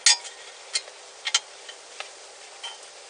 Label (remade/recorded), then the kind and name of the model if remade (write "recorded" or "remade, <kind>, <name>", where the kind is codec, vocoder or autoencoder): recorded